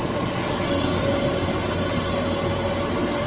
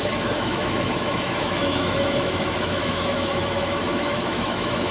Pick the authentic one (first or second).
first